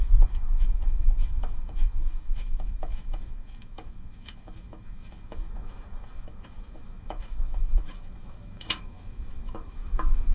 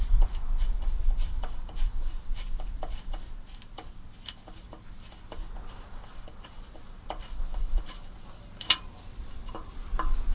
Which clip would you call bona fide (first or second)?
second